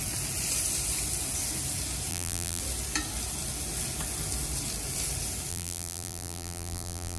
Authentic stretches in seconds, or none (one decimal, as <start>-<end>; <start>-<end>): 0.0-2.1; 2.6-5.5

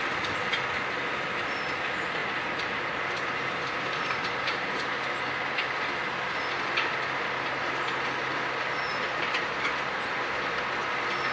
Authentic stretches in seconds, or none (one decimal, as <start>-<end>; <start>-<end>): 0.0-2.2; 4.9-8.9; 10.2-11.3

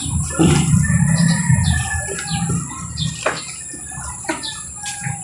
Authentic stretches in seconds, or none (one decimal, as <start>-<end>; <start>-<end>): 1.9-3.8

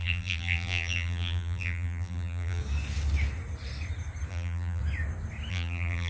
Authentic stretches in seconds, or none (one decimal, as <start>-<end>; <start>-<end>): 2.6-4.3; 4.8-5.5

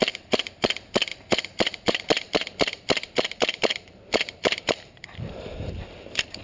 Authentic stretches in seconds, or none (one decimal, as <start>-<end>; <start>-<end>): none

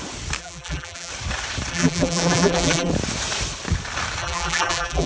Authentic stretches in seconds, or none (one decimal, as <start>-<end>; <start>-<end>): 0.0-0.4; 1.1-1.7; 2.9-4.2